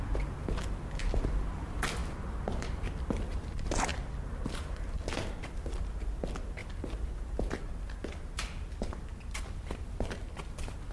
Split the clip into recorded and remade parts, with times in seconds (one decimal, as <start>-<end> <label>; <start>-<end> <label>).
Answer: 0.0-10.9 recorded